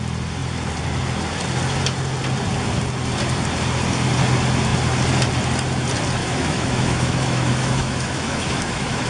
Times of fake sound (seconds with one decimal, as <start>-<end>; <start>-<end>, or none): 6.2-9.1